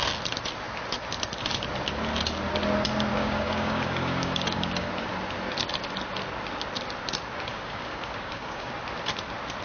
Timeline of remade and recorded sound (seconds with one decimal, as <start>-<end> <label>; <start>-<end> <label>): 0.0-3.1 recorded; 3.1-4.9 remade; 4.9-7.5 recorded; 7.5-8.7 remade; 8.7-9.6 recorded